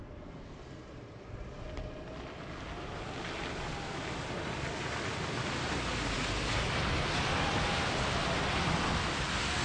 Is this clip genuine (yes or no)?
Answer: yes